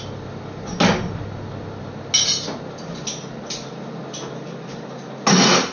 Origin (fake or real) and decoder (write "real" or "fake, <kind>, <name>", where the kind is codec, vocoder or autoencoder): real